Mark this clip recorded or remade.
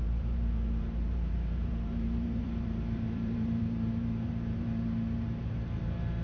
remade